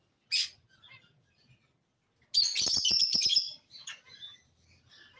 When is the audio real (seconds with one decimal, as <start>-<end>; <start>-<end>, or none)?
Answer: 0.0-5.2